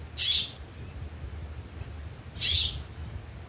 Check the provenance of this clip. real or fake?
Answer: real